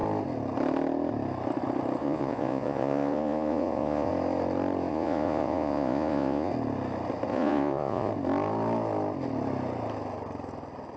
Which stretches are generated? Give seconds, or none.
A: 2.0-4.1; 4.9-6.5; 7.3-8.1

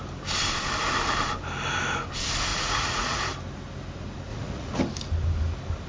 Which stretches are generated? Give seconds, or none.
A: 2.5-3.2; 4.3-4.8